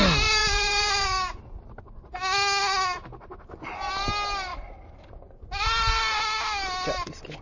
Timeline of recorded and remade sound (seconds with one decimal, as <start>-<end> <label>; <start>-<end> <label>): 0.0-0.4 recorded; 0.4-1.4 remade; 1.4-7.4 recorded

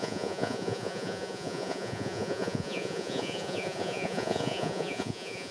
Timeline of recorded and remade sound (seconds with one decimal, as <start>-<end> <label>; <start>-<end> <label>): 0.0-5.5 remade

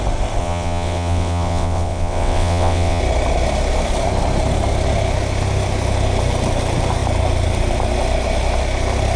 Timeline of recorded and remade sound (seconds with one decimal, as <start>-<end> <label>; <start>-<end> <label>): 0.0-0.4 recorded; 0.4-3.0 remade; 3.0-9.2 recorded